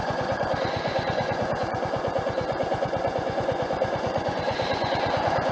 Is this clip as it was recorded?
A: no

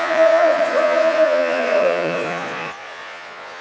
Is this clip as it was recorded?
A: no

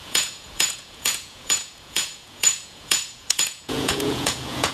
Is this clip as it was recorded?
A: no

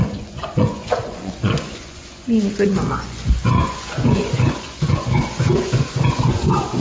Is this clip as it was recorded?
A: no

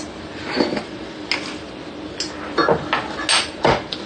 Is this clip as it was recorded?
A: yes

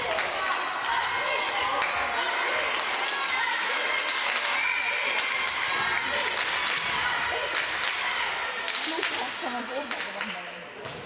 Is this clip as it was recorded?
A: yes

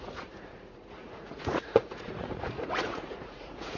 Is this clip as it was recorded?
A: no